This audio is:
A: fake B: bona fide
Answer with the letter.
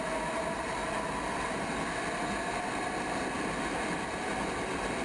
B